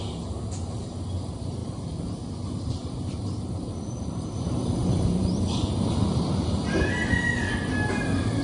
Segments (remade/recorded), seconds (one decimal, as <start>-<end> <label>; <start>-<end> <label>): 0.0-1.6 recorded; 1.6-6.2 remade; 6.2-8.4 recorded